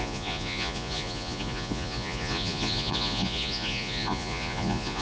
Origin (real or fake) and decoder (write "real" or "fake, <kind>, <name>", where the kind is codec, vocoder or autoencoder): fake, vocoder, Vocos